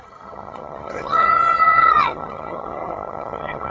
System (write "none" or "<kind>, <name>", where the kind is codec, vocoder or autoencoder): vocoder, HiFi-GAN